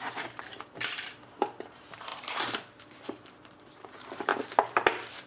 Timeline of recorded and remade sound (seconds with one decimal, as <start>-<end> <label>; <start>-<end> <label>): 0.0-4.3 remade; 4.3-5.3 recorded